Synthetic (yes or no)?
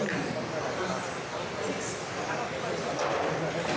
no